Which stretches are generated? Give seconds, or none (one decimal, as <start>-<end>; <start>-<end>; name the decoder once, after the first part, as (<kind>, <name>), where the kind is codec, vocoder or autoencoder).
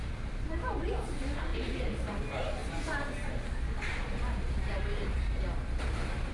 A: 0.0-0.7 (vocoder, BigVGAN v2); 1.5-2.2; 2.6-3.1; 3.9-6.3